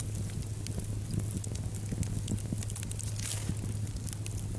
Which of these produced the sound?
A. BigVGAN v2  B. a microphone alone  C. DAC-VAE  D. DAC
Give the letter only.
B